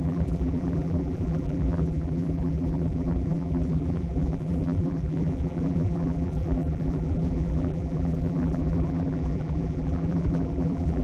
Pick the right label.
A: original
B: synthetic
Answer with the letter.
B